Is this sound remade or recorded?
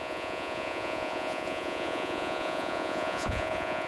remade